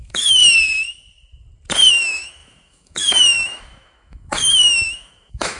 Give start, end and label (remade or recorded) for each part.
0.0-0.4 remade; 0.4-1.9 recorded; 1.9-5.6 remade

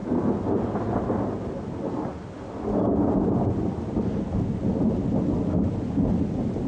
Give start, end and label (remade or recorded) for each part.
0.0-6.7 recorded